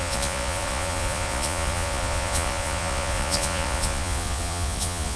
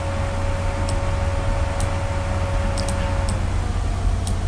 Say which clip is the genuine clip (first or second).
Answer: second